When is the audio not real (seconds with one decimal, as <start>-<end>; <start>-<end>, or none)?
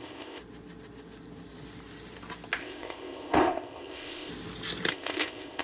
0.0-0.4; 2.6-4.3; 4.9-5.6